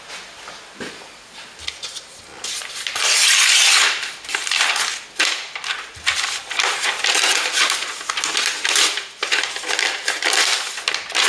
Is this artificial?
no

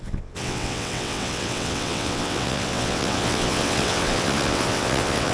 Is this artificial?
yes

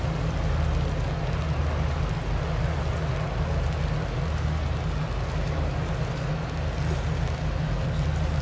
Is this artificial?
no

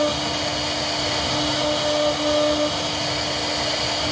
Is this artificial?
no